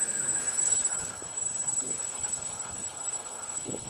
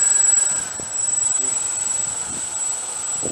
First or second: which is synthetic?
first